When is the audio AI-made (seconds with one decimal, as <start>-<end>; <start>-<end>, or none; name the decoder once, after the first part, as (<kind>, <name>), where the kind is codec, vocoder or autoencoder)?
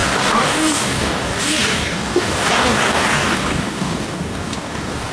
0.0-5.1 (codec, DAC)